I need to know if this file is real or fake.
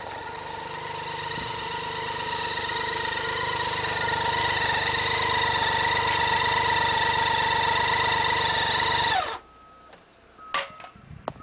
real